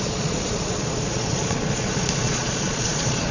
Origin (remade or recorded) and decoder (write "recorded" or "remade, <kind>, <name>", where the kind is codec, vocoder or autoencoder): remade, vocoder, Vocos